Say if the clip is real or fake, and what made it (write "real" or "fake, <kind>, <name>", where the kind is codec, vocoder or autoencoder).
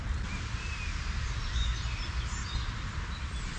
real